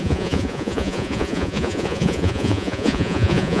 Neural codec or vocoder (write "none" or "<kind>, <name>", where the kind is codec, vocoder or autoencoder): vocoder, Vocos